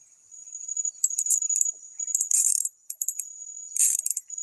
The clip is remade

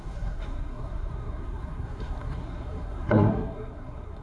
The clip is remade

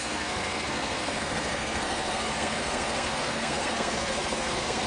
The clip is remade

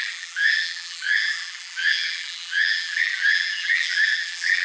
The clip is remade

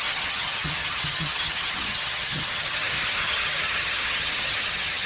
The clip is remade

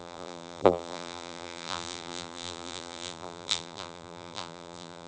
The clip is remade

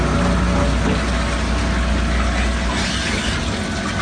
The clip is recorded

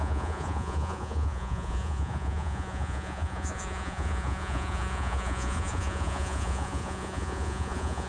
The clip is remade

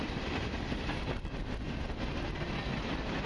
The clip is recorded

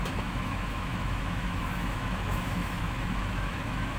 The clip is remade